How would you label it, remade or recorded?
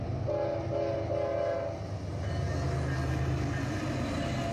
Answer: recorded